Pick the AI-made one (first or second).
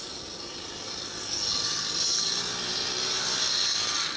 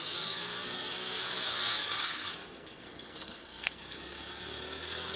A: second